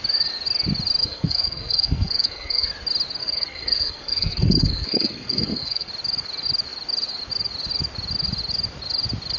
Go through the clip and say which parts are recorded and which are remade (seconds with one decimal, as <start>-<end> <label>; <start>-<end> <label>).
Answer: 0.0-1.0 recorded; 1.0-2.7 remade; 2.7-3.2 recorded; 3.2-5.9 remade; 5.9-9.4 recorded

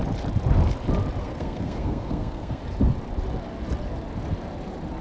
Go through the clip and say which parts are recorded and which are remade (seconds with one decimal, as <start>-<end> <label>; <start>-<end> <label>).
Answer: 0.0-1.2 recorded; 1.2-2.6 remade; 2.6-5.0 recorded

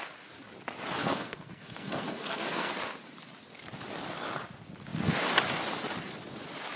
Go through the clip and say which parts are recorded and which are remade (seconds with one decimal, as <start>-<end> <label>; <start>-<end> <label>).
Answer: 0.0-1.0 recorded; 1.0-2.7 remade; 2.7-6.8 recorded

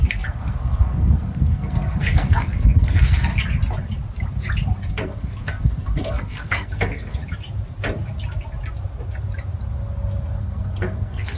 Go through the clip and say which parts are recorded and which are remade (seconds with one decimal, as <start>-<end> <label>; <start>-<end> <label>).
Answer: 0.0-3.3 remade; 3.3-4.9 recorded; 4.9-7.2 remade; 7.2-10.4 recorded; 10.4-11.4 remade

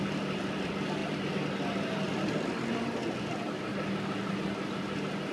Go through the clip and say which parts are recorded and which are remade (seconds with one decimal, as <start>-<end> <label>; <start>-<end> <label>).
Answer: 0.0-5.3 recorded